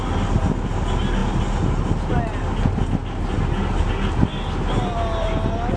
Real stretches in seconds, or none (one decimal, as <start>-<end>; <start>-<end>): 0.0-5.8